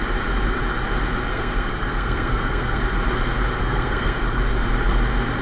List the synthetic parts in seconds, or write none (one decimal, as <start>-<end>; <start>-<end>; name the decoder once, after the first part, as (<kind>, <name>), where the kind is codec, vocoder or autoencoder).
1.3-2.8 (codec, SNAC); 3.6-4.2